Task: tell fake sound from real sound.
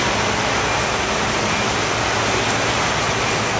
real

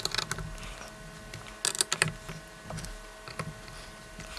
real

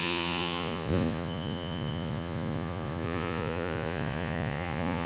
fake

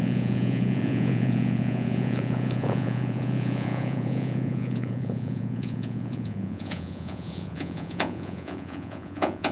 fake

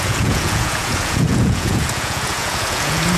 fake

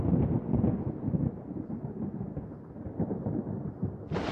real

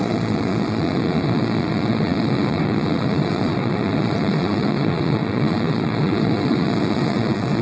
fake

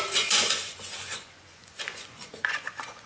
fake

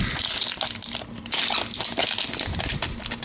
real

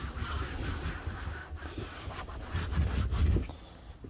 real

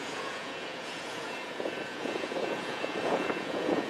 fake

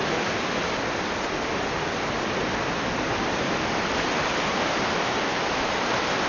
real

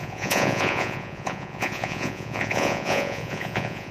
fake